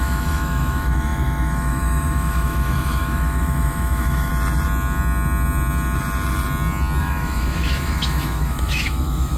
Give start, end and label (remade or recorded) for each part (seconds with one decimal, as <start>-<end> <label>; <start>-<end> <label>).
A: 0.0-4.3 remade; 4.3-7.0 recorded; 7.0-9.4 remade